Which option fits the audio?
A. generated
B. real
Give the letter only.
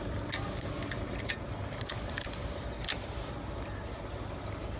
B